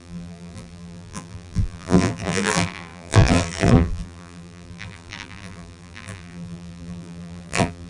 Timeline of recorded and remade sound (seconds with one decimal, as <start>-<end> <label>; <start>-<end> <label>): 0.0-7.9 remade